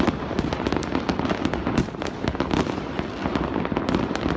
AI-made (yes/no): no